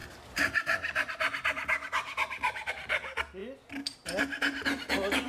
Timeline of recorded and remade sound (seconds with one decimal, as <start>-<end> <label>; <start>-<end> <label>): 0.0-5.3 recorded